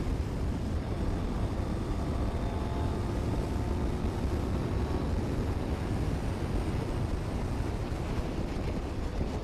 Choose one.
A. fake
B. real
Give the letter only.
B